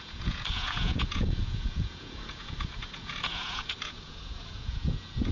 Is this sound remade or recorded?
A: remade